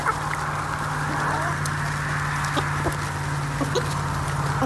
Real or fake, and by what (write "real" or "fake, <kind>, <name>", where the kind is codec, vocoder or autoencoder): real